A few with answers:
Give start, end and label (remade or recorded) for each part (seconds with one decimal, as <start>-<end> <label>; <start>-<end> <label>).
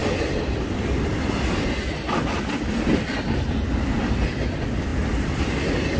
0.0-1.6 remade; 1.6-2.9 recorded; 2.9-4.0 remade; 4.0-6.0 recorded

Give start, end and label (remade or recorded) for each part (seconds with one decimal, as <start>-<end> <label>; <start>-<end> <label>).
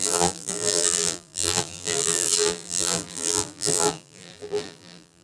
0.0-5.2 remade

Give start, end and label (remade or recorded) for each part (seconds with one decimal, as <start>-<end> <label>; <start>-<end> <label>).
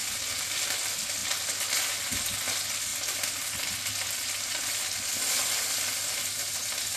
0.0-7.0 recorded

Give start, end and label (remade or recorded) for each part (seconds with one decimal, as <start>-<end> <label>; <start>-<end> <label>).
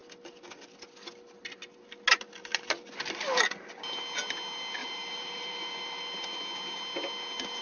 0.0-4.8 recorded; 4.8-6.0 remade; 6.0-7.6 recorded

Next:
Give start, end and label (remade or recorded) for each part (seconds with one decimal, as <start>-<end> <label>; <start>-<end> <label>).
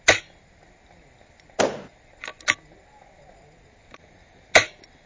0.0-5.1 recorded